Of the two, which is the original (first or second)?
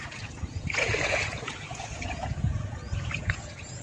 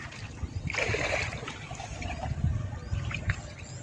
second